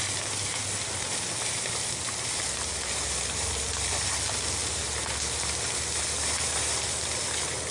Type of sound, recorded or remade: recorded